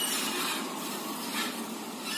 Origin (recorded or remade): recorded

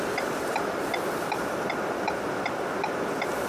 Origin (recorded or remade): remade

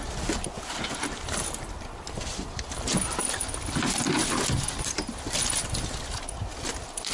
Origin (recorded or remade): recorded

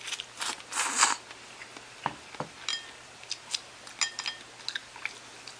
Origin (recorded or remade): recorded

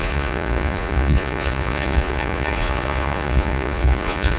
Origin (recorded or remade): remade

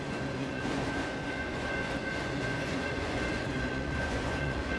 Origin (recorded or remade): remade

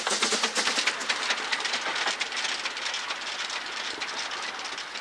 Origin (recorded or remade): recorded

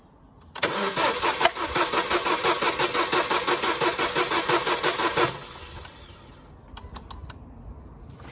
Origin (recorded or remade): recorded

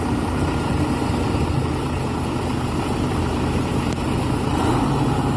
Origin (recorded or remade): recorded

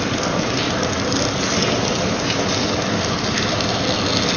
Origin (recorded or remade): recorded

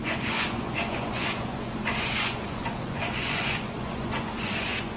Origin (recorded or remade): remade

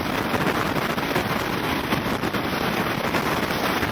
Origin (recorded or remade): recorded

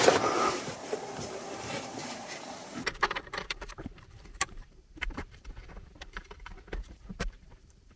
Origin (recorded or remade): remade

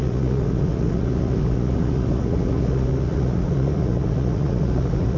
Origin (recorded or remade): remade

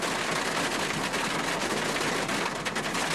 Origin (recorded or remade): recorded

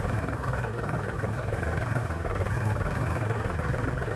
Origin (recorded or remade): remade